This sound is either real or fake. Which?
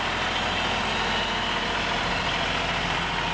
real